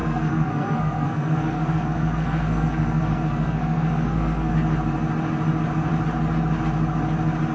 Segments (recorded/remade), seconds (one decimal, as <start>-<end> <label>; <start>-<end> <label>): 0.0-4.5 remade; 4.5-7.5 recorded